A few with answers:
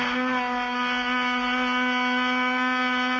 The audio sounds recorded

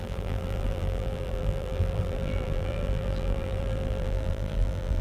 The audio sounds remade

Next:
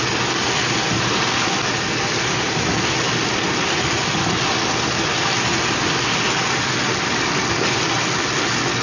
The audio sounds recorded